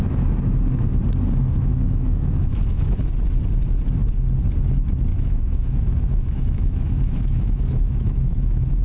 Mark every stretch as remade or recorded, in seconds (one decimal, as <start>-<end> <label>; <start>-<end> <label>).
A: 0.0-1.7 recorded; 1.7-3.0 remade; 3.0-5.1 recorded; 5.1-8.8 remade